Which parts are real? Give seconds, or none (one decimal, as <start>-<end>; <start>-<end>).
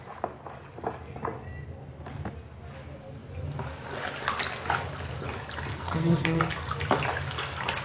0.0-5.7; 6.4-7.8